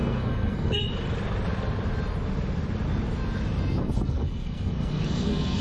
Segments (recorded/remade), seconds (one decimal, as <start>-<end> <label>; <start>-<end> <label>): 0.0-0.8 remade; 0.8-3.8 recorded; 3.8-5.6 remade